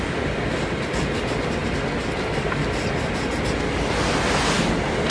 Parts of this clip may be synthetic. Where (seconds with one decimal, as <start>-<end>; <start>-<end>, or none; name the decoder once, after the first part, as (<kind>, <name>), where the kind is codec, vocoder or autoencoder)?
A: none